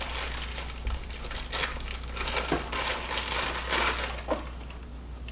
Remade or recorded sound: recorded